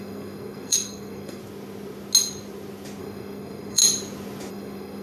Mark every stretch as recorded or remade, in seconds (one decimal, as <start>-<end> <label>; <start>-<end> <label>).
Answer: 0.0-1.4 remade; 1.4-3.0 recorded; 3.0-3.8 remade; 3.8-4.5 recorded; 4.5-5.0 remade